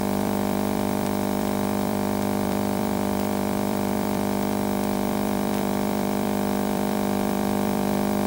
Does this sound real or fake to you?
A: fake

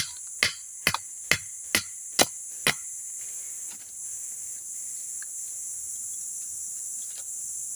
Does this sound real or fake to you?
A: real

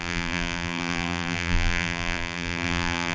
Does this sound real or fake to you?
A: fake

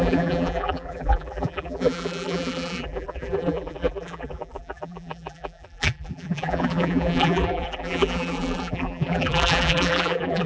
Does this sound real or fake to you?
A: fake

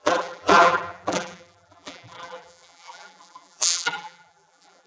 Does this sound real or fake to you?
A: fake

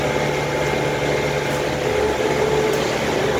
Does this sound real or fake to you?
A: real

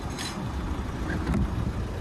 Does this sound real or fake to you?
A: real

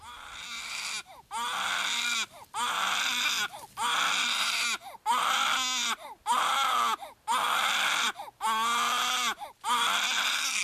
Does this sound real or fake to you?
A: real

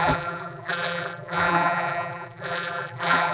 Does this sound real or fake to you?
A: fake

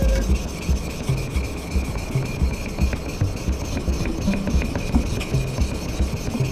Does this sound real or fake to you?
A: real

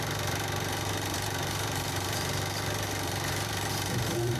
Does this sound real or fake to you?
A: fake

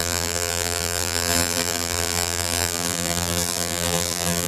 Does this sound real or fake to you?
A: fake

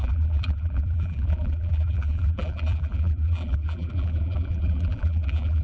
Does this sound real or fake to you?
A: fake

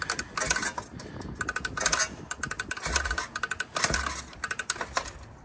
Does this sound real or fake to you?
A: real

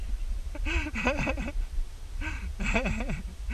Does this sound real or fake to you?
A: fake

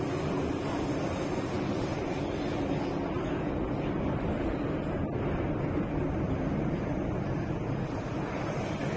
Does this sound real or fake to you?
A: real